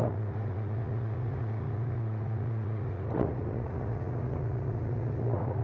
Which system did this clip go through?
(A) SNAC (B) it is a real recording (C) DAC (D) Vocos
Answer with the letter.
D